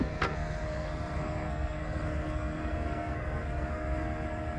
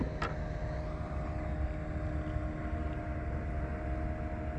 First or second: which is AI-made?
first